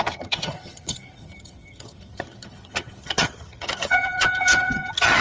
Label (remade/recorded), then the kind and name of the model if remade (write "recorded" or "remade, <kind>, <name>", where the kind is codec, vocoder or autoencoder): remade, vocoder, HiFi-GAN